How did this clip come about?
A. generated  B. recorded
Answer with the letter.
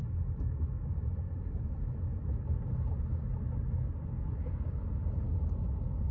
B